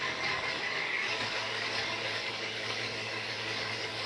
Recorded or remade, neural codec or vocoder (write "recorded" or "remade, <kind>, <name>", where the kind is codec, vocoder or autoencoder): remade, codec, DAC